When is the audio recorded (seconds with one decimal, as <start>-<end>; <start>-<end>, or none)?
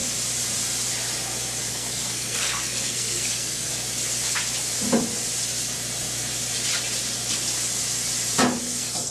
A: 0.0-1.7; 3.7-8.6